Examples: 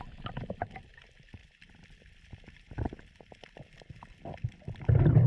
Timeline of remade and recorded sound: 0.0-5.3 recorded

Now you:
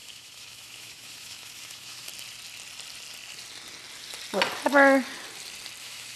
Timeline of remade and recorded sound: 0.0-2.1 remade; 2.1-5.8 recorded; 5.8-6.2 remade

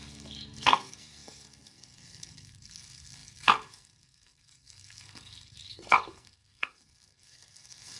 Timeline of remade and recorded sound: 0.0-8.0 remade

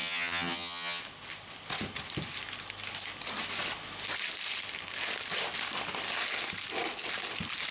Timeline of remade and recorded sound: 0.0-1.0 remade; 1.0-7.7 recorded

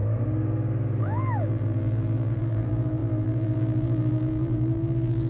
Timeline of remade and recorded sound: 0.0-1.0 recorded; 1.0-5.3 remade